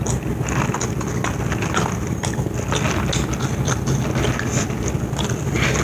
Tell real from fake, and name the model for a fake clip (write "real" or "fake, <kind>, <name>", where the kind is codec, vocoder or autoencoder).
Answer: real